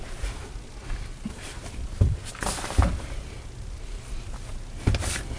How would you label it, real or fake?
real